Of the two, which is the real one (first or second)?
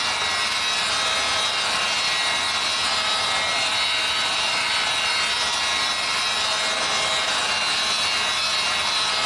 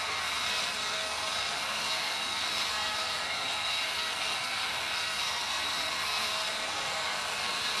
first